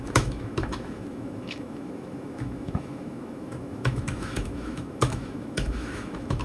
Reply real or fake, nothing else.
fake